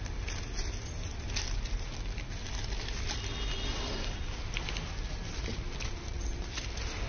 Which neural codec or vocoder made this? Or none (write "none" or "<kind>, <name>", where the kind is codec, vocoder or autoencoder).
none